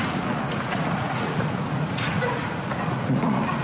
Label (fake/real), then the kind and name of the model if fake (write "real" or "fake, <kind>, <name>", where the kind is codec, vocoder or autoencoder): fake, vocoder, Vocos